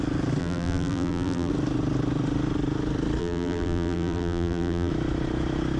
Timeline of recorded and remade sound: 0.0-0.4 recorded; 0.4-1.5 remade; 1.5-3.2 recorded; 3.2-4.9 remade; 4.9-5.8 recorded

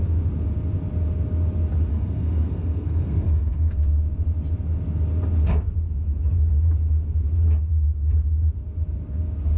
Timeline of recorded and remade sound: 0.0-1.9 recorded; 1.9-3.7 remade; 3.7-9.6 recorded